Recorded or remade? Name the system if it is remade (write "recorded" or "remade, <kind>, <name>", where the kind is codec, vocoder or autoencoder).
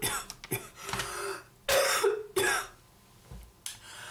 recorded